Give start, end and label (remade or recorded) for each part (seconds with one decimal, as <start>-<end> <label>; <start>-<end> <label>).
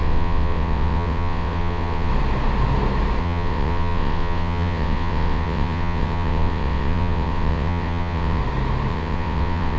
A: 0.0-2.1 remade; 2.1-3.2 recorded; 3.2-8.4 remade; 8.4-8.9 recorded; 8.9-9.8 remade